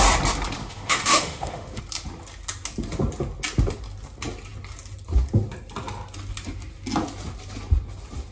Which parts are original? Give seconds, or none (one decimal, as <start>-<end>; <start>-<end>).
0.0-0.6; 1.8-8.3